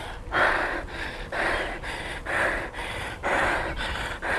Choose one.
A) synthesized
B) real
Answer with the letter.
B